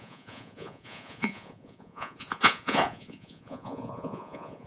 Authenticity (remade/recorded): remade